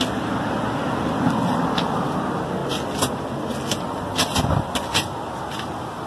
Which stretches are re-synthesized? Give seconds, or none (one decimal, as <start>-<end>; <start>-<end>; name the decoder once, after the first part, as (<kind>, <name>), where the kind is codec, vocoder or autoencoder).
none